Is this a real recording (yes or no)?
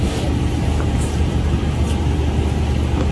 yes